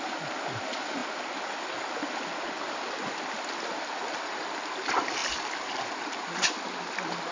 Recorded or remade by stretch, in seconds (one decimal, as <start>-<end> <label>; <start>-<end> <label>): 0.0-7.3 recorded